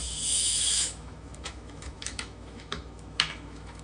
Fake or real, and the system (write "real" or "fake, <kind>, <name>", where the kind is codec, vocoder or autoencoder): fake, autoencoder, DAC-VAE